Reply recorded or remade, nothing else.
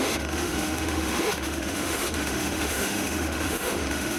remade